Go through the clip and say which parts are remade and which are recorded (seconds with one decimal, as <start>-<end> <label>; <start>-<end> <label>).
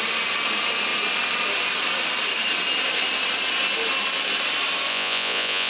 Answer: 0.0-4.9 recorded; 4.9-5.7 remade